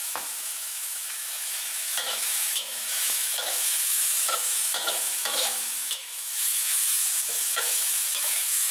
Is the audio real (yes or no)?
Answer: no